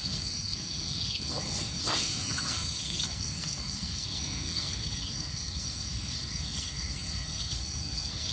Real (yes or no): no